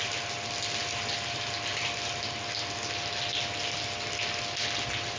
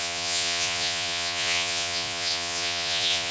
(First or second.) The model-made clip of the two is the second